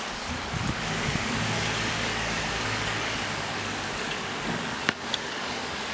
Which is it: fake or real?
fake